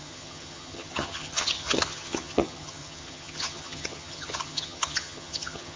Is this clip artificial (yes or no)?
yes